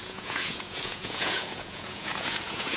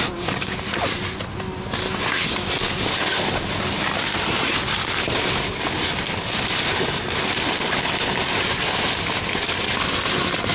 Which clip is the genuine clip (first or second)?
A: second